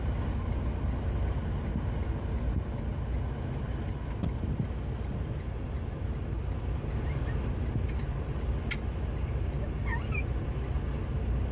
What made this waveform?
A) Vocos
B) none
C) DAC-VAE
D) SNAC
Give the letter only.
B